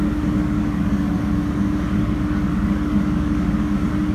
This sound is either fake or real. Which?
fake